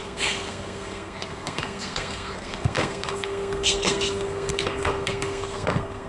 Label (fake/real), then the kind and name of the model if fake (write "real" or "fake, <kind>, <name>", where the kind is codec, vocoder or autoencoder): fake, codec, SNAC